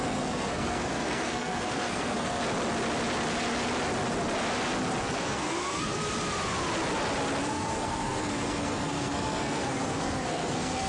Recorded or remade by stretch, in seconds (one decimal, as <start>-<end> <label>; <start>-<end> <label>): 0.0-2.4 remade; 2.4-5.0 recorded; 5.0-6.0 remade; 6.0-7.5 recorded; 7.5-10.9 remade